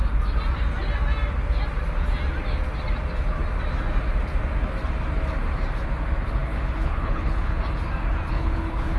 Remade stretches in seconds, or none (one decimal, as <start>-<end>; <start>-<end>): 6.4-7.6; 8.3-9.0